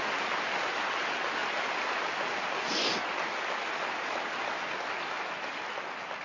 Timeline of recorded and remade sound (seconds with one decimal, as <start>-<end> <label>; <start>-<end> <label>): 0.0-6.2 recorded